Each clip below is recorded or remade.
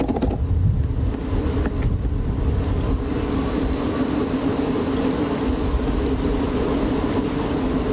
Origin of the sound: recorded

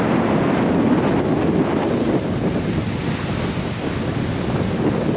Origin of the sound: recorded